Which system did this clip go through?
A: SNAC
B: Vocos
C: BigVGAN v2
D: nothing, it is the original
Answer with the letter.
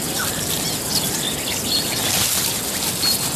D